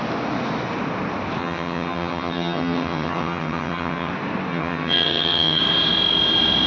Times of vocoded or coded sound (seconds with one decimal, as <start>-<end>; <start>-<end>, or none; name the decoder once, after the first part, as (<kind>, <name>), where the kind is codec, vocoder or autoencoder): 1.4-4.1 (vocoder, HiFi-GAN); 4.5-5.6